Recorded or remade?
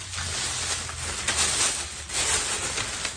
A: recorded